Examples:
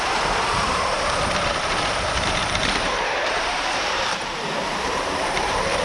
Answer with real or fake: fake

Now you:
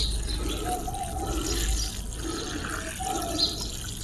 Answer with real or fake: real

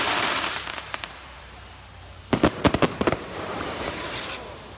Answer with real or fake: fake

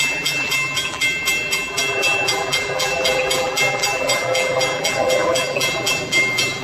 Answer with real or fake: fake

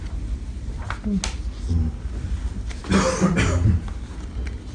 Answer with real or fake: real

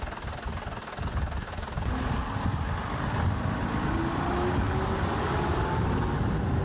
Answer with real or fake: real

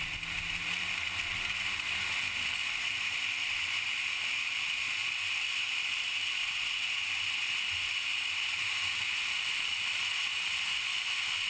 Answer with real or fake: real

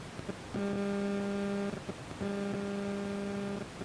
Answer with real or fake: real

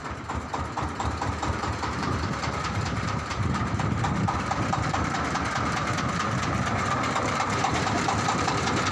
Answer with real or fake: fake